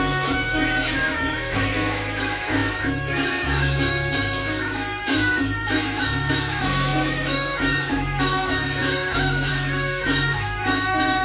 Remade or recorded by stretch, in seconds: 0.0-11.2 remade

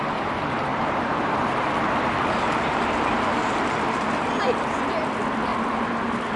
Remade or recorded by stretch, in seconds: 0.0-0.7 recorded; 0.7-4.2 remade; 4.2-5.5 recorded; 5.5-6.4 remade

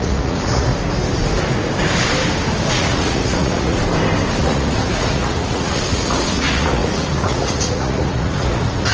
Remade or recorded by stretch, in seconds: 0.0-0.7 remade; 0.7-2.7 recorded; 2.7-3.8 remade; 3.8-4.4 recorded; 4.4-8.9 remade

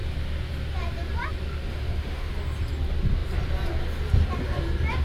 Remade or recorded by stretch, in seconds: 0.0-1.7 recorded; 1.7-2.3 remade; 2.3-5.0 recorded

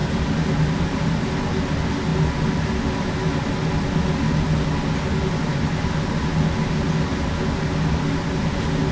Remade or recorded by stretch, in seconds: 0.0-1.3 remade; 1.3-8.9 recorded